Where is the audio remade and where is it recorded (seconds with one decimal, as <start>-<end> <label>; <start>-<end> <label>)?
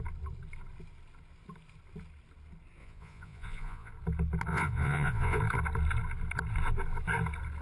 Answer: 0.0-2.8 recorded; 2.8-3.9 remade; 3.9-4.5 recorded; 4.5-5.4 remade; 5.4-7.6 recorded